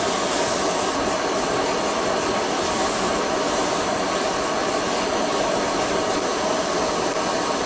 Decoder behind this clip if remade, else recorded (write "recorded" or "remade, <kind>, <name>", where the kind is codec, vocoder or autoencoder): recorded